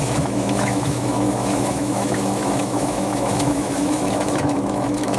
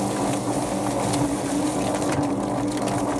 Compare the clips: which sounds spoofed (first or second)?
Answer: first